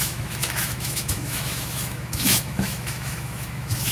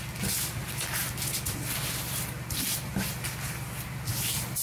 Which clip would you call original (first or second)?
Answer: second